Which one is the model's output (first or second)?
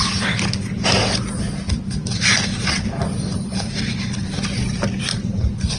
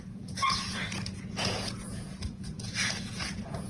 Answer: second